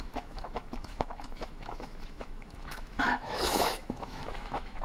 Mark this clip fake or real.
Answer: fake